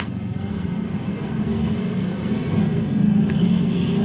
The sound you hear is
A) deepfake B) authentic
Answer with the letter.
A